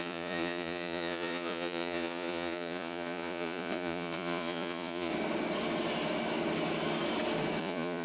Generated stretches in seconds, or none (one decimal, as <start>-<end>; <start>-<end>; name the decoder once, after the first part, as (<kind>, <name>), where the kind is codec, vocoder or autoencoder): 0.0-5.1 (vocoder, Vocos); 7.6-8.0